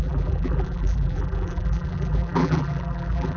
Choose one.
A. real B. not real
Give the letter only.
B